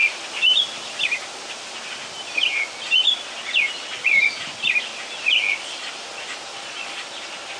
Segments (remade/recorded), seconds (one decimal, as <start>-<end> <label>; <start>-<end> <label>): 0.0-6.5 recorded; 6.5-7.0 remade; 7.0-7.6 recorded